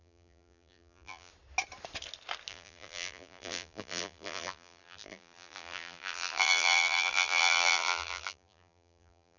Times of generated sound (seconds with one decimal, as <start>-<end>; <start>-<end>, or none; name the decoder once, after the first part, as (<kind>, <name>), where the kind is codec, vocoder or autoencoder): 0.0-1.3 (vocoder, BigVGAN v2); 2.5-9.4